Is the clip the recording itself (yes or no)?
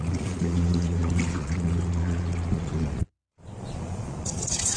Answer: no